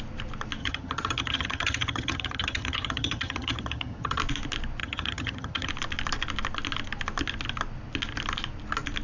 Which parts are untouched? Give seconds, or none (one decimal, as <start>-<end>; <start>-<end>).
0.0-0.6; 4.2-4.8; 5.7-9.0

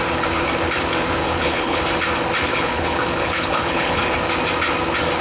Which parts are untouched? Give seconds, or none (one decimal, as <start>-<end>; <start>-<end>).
0.0-1.2; 1.8-2.5; 4.0-5.2

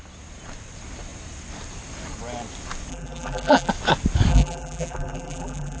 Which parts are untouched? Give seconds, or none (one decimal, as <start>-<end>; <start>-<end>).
0.0-2.9; 3.7-4.3